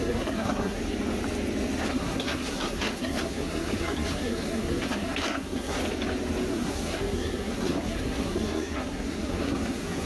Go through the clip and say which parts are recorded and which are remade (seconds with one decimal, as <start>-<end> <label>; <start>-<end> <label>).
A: 0.0-0.8 remade; 0.8-1.9 recorded; 1.9-5.8 remade; 5.8-6.5 recorded; 6.5-10.1 remade